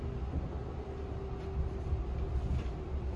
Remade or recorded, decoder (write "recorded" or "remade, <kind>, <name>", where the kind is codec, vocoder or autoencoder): recorded